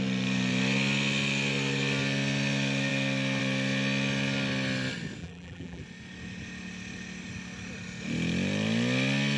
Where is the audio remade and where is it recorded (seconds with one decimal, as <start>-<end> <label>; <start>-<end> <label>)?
0.0-5.2 recorded; 5.2-5.8 remade; 5.8-9.4 recorded